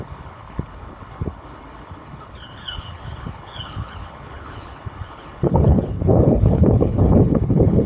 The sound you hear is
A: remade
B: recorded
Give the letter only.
A